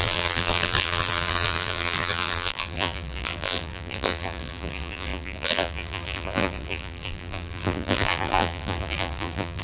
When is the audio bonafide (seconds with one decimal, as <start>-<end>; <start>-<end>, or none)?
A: none